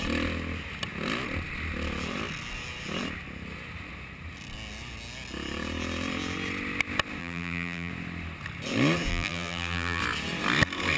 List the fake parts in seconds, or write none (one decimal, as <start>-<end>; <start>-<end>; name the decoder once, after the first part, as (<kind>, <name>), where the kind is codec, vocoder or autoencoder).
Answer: 7.2-7.9 (vocoder, BigVGAN v2); 9.1-10.0

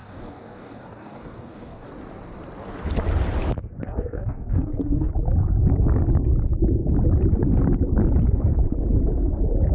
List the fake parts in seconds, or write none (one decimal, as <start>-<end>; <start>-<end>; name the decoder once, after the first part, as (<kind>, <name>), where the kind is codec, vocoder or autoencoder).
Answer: 0.0-1.9 (codec, DAC); 3.6-5.1

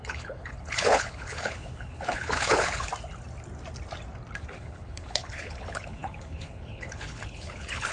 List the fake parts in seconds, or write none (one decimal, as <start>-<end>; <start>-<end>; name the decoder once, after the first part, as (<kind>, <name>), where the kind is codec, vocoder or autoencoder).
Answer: 0.0-2.9 (codec, HILCodec); 4.5-7.9